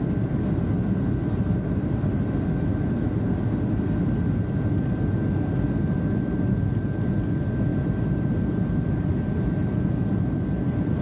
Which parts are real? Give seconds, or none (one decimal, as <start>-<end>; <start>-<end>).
0.0-11.0